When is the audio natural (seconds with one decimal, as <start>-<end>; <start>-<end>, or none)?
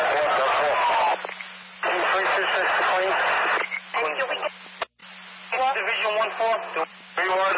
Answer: 0.0-7.6